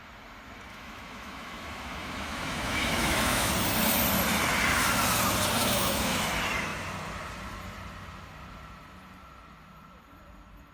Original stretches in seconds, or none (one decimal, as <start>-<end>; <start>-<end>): 0.0-0.7; 3.5-5.6; 6.3-10.7

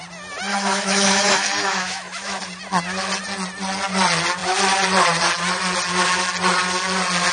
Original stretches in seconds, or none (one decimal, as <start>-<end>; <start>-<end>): 0.0-0.5; 2.4-7.3